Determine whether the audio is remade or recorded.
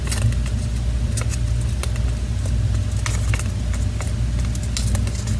recorded